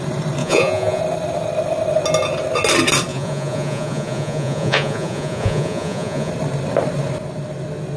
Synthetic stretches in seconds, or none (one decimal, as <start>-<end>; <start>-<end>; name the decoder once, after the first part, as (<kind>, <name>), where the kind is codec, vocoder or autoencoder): 0.4-1.0 (vocoder, Vocos); 3.1-6.3